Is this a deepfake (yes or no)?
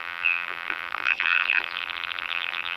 yes